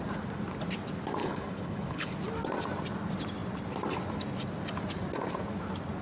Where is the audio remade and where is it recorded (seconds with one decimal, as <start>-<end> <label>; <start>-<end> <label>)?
0.0-1.2 recorded; 1.2-2.1 remade; 2.1-6.0 recorded